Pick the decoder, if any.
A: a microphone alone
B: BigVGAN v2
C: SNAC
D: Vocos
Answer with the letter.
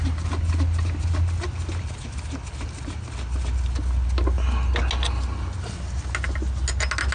A